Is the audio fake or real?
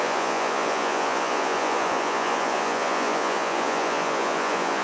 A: fake